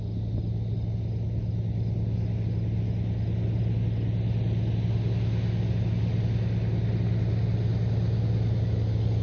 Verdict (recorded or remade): recorded